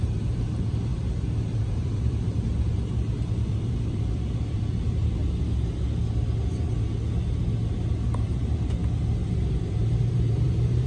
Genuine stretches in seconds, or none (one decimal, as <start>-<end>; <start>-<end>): 5.2-7.9; 8.8-9.5